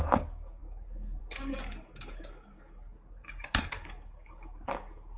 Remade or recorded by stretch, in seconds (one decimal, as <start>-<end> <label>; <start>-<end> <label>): 0.0-5.2 remade